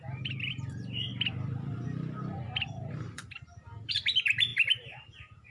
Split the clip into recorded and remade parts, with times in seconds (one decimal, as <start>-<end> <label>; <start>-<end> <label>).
0.0-5.5 remade